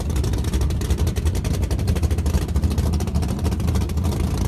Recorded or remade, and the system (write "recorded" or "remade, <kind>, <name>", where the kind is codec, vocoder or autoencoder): remade, vocoder, BigVGAN v2